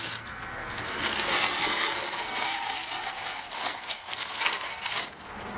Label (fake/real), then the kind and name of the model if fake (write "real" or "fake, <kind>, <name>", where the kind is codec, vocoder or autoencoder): fake, codec, SNAC